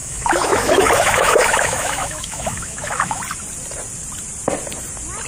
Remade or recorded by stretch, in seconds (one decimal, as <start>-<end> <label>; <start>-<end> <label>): 0.0-3.2 remade; 3.2-5.3 recorded